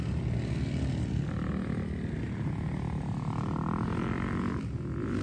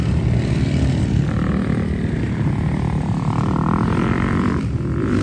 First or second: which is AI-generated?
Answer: second